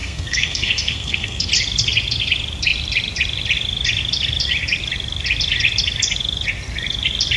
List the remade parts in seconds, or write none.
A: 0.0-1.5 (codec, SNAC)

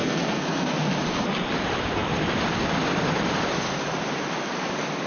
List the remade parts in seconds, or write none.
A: 0.0-0.9 (codec, SNAC)

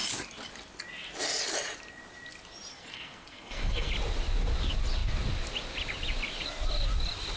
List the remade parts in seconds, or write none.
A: 2.7-3.9 (codec, SNAC)

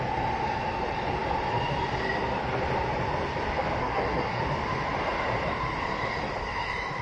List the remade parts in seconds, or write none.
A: 3.8-4.4 (codec, SNAC)

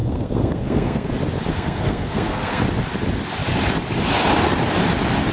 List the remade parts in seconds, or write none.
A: 0.0-1.1 (codec, SNAC); 1.5-2.6

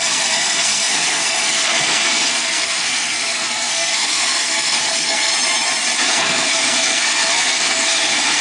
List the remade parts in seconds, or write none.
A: 0.0-5.3 (codec, SNAC); 6.1-8.4